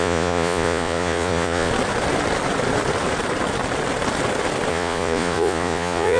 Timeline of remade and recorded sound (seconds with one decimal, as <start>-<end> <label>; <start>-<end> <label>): 0.0-1.7 remade; 1.7-4.7 recorded; 4.7-6.2 remade

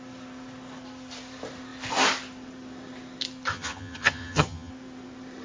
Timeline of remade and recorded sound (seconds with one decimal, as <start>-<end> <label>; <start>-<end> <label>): 0.0-3.5 recorded; 3.5-4.7 remade; 4.7-5.4 recorded